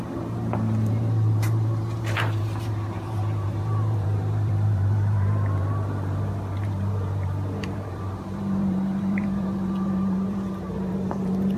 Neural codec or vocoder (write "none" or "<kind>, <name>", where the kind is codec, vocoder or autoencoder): vocoder, BigVGAN v2